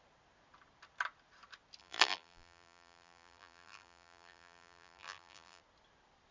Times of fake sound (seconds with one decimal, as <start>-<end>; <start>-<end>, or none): 1.8-5.6